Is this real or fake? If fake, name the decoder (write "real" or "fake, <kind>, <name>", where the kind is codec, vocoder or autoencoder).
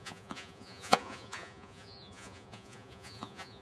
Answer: fake, vocoder, Vocos